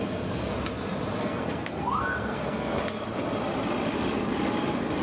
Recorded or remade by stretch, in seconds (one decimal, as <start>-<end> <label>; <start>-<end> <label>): 0.0-0.5 remade; 0.5-1.2 recorded; 1.2-2.8 remade; 2.8-5.0 recorded